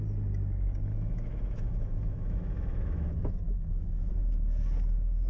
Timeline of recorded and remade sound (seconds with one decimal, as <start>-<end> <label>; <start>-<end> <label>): 0.0-0.9 recorded; 0.9-4.1 remade; 4.1-5.3 recorded